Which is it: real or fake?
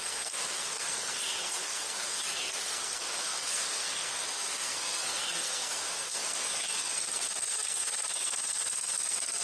fake